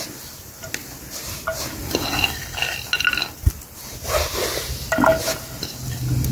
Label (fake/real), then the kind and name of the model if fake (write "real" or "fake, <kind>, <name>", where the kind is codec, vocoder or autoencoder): real